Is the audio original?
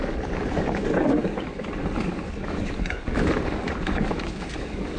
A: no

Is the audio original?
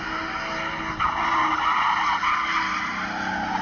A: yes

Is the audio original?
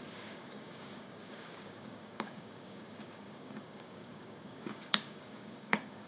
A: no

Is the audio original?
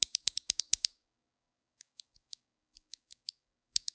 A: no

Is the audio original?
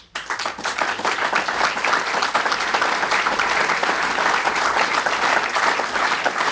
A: yes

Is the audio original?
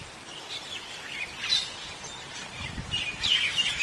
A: yes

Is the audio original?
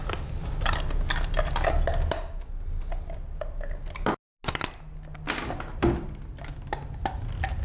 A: yes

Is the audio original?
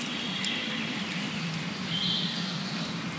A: yes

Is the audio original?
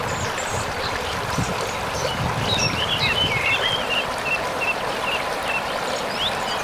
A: yes